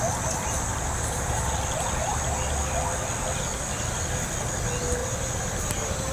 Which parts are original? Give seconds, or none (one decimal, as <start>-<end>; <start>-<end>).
0.0-0.7; 1.5-5.0